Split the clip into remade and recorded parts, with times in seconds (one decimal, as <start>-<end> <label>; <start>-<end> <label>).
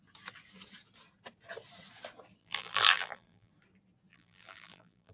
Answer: 0.0-2.4 recorded; 2.4-3.5 remade; 3.5-4.1 recorded; 4.1-5.1 remade